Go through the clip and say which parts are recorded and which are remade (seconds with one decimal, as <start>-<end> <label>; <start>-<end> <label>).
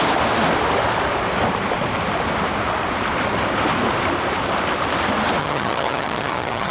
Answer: 0.0-5.4 recorded; 5.4-6.7 remade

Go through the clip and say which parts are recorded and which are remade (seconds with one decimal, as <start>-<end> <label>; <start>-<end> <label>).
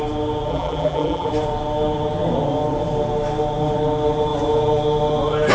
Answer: 0.0-0.5 recorded; 0.5-1.3 remade; 1.3-5.5 recorded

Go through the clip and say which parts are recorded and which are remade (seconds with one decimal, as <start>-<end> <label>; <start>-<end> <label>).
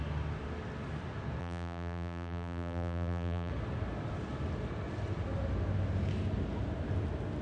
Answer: 0.0-1.4 recorded; 1.4-3.5 remade; 3.5-7.4 recorded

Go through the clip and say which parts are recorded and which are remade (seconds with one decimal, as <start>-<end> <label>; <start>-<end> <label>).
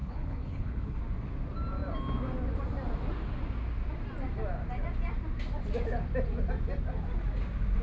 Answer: 0.0-1.0 remade; 1.0-7.8 recorded